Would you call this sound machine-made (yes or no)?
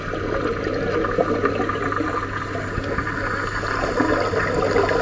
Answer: no